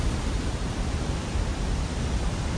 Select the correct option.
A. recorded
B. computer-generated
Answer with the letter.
A